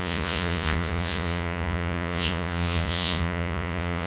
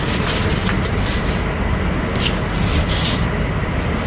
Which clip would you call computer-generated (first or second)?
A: first